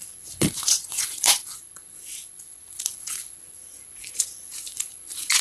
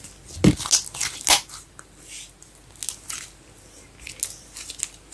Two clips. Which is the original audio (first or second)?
second